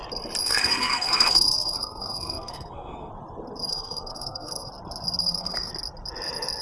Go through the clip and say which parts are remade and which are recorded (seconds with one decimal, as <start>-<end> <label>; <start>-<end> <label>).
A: 0.0-0.4 recorded; 0.4-3.1 remade; 3.1-3.7 recorded; 3.7-4.7 remade; 4.7-5.2 recorded; 5.2-5.7 remade; 5.7-6.6 recorded